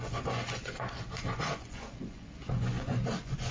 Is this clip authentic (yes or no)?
no